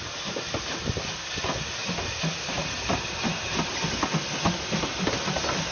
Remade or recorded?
recorded